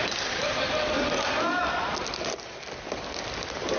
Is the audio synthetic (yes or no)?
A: no